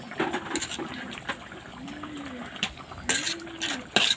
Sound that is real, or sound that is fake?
real